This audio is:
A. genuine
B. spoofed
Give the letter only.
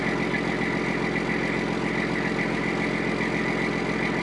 A